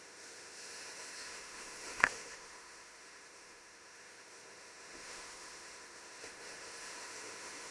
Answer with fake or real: fake